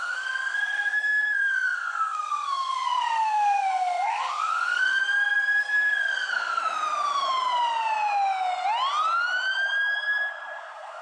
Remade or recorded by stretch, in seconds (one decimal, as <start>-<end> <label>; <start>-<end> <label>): 0.0-5.0 remade; 5.0-5.6 recorded; 5.6-6.6 remade; 6.6-10.6 recorded; 10.6-11.0 remade